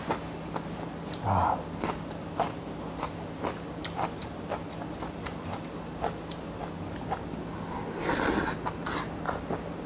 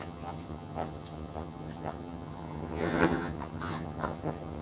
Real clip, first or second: first